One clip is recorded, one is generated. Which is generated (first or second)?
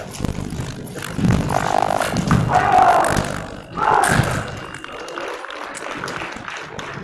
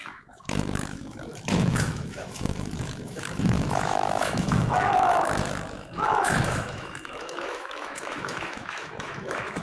second